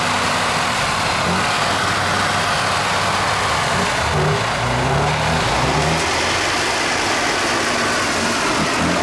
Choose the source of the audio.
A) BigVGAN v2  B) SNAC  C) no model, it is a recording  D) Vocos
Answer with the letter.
C